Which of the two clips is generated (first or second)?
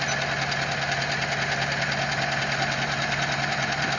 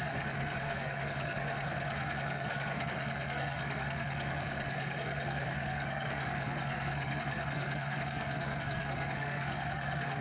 second